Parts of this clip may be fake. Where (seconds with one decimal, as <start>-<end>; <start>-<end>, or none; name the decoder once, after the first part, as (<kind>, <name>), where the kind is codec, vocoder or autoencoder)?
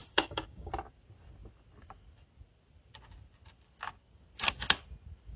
0.0-0.7 (codec, DAC)